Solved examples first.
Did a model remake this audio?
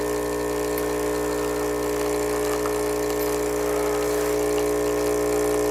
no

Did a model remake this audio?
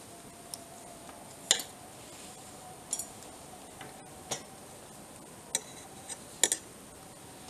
no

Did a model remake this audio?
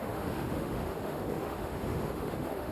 yes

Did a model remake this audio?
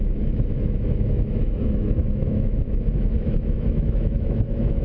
yes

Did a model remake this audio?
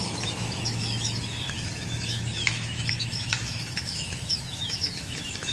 yes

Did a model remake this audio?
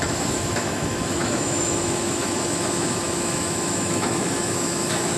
yes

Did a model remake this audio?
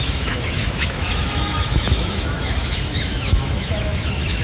yes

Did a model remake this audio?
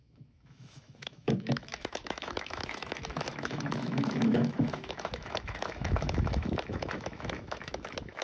yes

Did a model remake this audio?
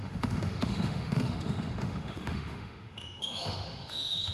yes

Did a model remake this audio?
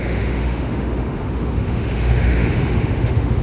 yes